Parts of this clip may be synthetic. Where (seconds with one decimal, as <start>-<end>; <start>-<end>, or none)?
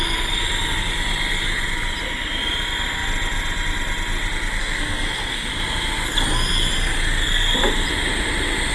4.6-5.5